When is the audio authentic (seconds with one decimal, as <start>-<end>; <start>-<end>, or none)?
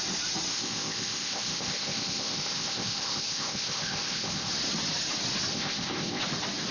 0.0-0.5; 4.5-5.5; 6.2-6.7